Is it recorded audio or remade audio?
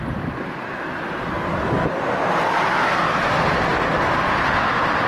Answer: recorded